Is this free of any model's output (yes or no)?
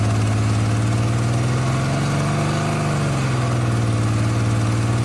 yes